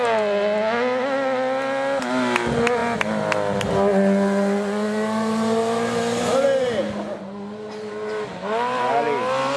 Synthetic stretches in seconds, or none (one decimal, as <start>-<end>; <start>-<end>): none